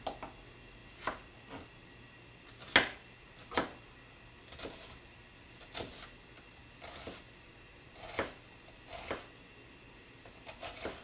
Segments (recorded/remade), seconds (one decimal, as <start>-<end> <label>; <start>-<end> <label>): 0.0-11.0 recorded